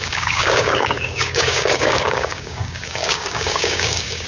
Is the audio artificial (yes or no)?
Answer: yes